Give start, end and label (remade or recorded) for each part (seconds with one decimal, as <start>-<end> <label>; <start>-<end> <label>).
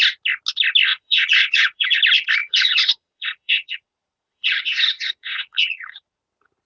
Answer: 0.0-0.9 recorded; 0.9-2.0 remade; 2.0-2.4 recorded; 2.4-6.2 remade; 6.2-6.7 recorded